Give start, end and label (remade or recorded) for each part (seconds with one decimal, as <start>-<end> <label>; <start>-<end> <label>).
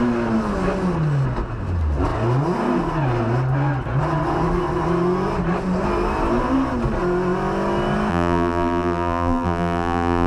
0.0-8.1 recorded; 8.1-10.3 remade